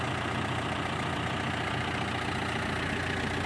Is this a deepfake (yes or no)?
no